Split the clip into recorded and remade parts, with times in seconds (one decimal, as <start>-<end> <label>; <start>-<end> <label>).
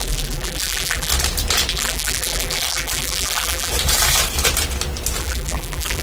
0.0-1.1 remade; 1.1-1.7 recorded; 1.7-3.7 remade; 3.7-5.2 recorded; 5.2-6.0 remade